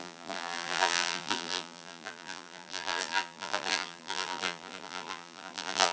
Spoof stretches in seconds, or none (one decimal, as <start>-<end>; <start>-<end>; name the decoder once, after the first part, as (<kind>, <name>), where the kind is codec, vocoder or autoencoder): 0.0-5.9 (vocoder, BigVGAN v2)